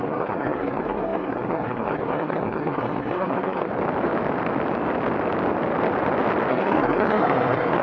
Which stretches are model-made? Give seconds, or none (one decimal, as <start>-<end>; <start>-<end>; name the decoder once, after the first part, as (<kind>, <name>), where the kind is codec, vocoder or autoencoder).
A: 0.0-3.7 (codec, SNAC); 6.5-7.8